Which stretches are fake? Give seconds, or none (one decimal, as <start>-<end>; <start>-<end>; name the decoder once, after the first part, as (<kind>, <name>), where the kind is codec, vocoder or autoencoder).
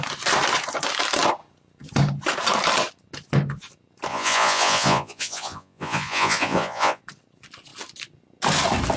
4.1-7.0 (vocoder, Vocos)